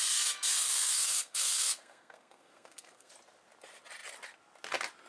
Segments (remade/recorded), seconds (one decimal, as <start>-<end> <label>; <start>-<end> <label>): 0.0-3.1 remade; 3.1-5.1 recorded